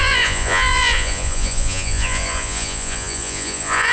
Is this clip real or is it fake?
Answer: fake